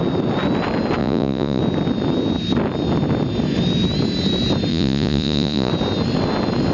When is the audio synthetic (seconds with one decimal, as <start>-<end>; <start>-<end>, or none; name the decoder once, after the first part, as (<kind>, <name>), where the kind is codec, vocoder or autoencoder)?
1.0-1.6 (vocoder, Vocos); 4.7-5.7